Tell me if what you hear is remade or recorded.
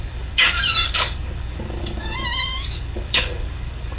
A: remade